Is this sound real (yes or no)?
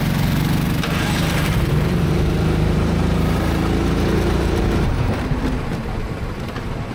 no